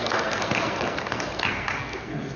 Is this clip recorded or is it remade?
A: remade